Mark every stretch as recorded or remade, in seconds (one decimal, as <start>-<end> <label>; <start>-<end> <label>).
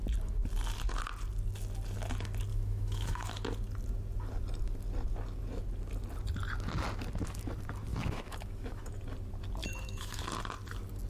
0.0-2.5 recorded; 2.5-3.3 remade; 3.3-7.9 recorded; 7.9-8.8 remade; 8.8-9.6 recorded; 9.6-10.2 remade; 10.2-11.1 recorded